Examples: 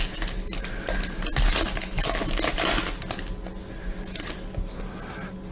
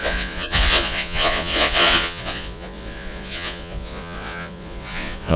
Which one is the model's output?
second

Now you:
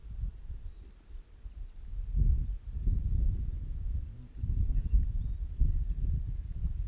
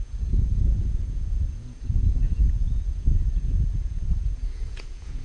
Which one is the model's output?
second